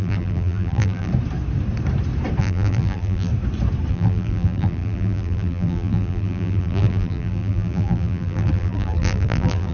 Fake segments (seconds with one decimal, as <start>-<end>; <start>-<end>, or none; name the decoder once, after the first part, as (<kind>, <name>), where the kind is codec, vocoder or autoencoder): 0.0-1.1 (vocoder, BigVGAN v2); 2.4-3.3; 3.9-9.7